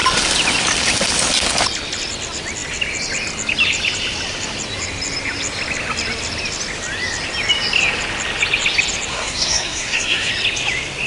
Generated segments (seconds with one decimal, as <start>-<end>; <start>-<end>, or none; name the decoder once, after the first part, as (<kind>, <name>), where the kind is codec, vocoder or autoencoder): 9.1-10.3 (codec, SNAC)